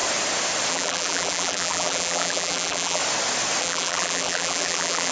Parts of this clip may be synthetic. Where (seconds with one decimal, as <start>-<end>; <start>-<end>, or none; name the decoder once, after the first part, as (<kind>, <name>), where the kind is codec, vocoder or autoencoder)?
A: 0.7-3.0 (vocoder, BigVGAN v2); 3.6-5.1